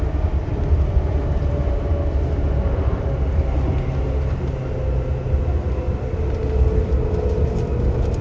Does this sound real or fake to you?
real